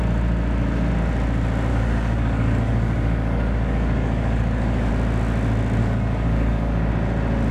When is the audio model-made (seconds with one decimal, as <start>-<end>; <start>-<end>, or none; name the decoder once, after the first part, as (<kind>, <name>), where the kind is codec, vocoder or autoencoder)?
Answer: 1.7-4.9 (codec, DAC); 5.8-6.9